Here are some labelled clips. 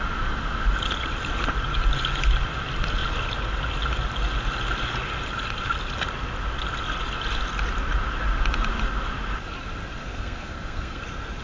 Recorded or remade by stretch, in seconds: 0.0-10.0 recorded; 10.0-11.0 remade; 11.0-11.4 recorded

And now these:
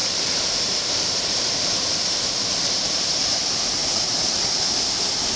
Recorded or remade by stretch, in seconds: 0.0-3.2 remade; 3.2-3.8 recorded; 3.8-4.6 remade; 4.6-5.4 recorded

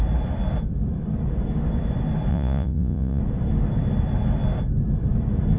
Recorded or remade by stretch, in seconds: 0.0-2.3 recorded; 2.3-3.2 remade; 3.2-5.6 recorded

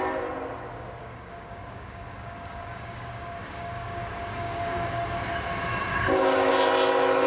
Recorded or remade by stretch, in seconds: 0.0-1.0 recorded; 1.0-5.2 remade; 5.2-5.9 recorded; 5.9-6.5 remade; 6.5-7.3 recorded